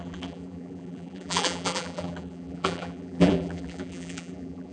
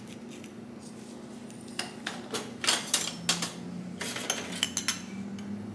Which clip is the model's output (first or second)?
first